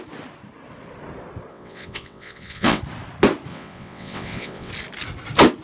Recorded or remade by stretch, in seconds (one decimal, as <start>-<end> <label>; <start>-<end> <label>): 0.0-1.5 recorded; 1.5-2.8 remade; 2.8-3.5 recorded; 3.5-4.7 remade; 4.7-5.6 recorded